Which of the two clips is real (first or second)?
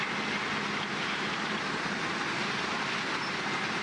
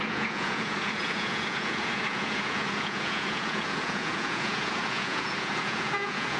first